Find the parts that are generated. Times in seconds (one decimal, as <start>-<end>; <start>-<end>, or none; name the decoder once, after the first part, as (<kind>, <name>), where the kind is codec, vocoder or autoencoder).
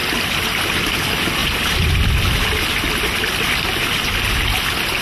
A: none